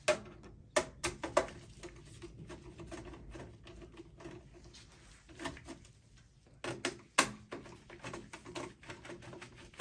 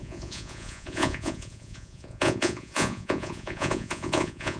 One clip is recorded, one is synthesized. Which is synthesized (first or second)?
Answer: second